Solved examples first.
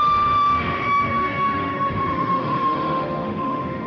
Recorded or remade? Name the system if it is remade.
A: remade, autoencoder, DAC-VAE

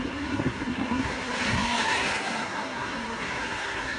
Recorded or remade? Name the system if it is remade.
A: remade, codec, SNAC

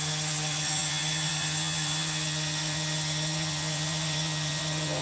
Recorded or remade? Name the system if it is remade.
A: remade, vocoder, HiFi-GAN